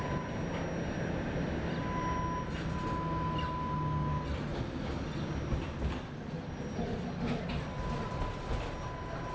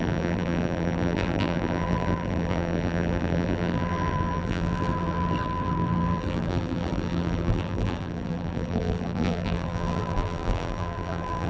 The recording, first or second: first